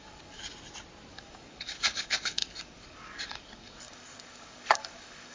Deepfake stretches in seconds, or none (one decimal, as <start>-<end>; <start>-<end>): 0.0-0.4; 1.1-5.3